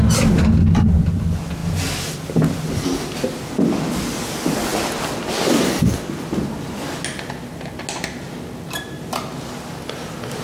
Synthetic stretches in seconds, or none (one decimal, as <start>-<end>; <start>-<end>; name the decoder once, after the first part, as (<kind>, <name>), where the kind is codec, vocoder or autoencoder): none